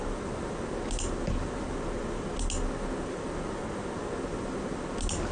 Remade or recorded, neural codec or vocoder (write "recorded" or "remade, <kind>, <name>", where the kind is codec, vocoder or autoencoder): recorded